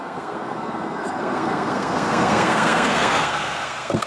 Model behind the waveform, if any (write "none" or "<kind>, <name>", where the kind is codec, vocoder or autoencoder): codec, SNAC